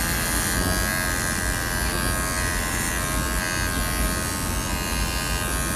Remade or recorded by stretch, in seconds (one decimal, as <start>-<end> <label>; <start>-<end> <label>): 0.0-5.8 recorded